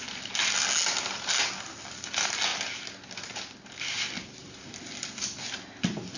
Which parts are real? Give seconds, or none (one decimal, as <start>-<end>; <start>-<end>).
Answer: 0.0-6.2